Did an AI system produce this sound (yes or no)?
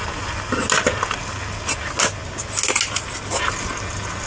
no